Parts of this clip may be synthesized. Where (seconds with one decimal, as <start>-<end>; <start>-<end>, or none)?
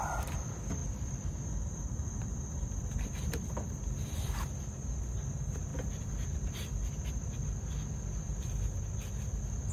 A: 0.0-9.7